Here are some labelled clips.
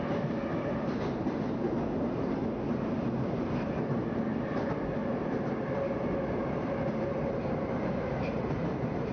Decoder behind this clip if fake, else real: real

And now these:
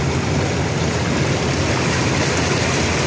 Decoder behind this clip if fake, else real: real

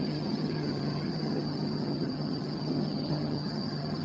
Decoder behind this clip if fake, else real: fake, vocoder, HiFi-GAN